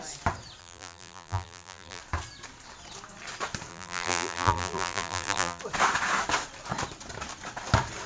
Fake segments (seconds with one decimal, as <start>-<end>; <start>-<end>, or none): 0.6-2.0; 3.7-5.6